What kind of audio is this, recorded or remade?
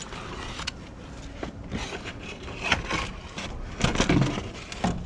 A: recorded